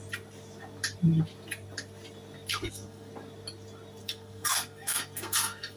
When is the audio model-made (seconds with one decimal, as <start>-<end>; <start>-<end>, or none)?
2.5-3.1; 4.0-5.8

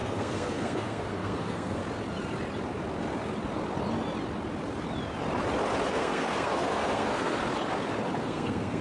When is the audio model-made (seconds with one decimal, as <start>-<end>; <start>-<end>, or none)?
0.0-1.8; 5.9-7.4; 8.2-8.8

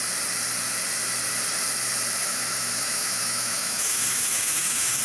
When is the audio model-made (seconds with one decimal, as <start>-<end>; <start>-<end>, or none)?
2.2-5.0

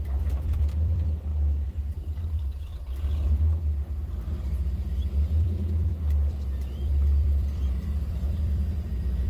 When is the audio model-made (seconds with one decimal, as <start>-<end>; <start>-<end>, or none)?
0.0-2.7; 4.4-9.3